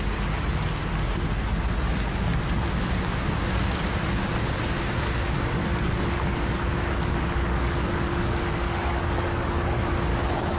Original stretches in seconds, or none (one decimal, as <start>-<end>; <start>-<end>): 0.0-5.6; 9.6-10.1

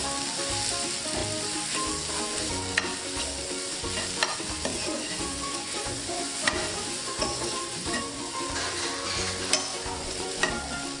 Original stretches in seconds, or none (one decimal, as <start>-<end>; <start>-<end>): 0.0-4.7; 8.3-9.7; 10.4-11.0

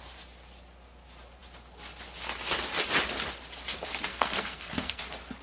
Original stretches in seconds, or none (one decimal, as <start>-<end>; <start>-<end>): 0.0-4.1; 5.0-5.4

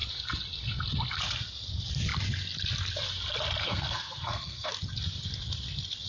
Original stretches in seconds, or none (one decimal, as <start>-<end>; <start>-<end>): 0.0-3.6; 4.7-6.1

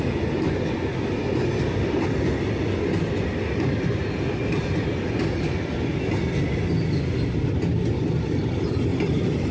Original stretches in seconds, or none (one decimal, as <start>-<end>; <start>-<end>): 0.0-9.5

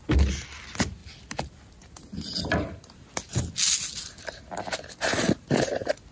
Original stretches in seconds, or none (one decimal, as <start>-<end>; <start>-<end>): 0.0-6.1